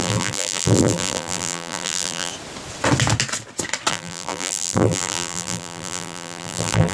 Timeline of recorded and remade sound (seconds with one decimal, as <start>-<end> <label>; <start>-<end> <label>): 0.0-2.3 remade; 2.3-3.9 recorded; 3.9-6.9 remade